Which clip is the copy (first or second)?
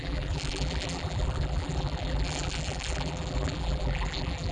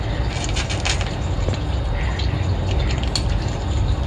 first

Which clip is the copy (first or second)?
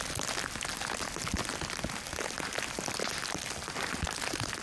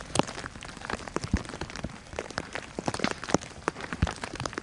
second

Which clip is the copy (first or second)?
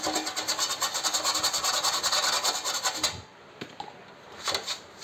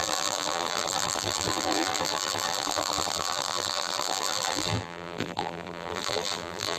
second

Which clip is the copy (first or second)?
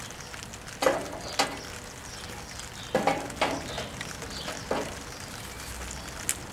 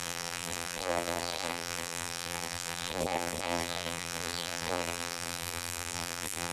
second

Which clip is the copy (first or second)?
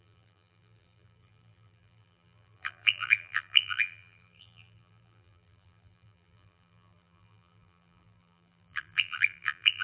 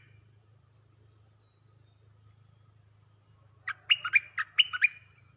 first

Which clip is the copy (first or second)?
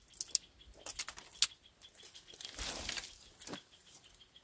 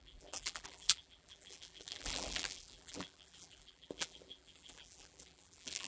second